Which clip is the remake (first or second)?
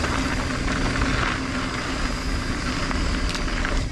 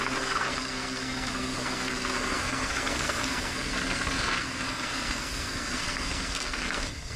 second